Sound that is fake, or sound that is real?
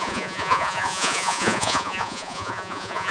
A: fake